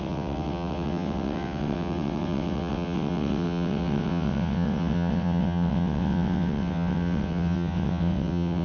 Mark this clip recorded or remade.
remade